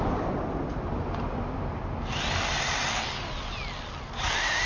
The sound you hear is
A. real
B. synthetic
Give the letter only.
A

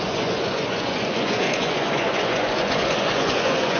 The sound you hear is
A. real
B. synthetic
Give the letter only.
B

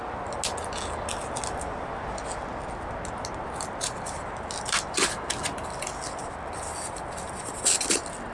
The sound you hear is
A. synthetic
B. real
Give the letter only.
B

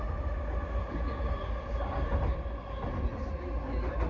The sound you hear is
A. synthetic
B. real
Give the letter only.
B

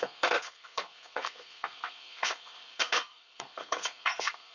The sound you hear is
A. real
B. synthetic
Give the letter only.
B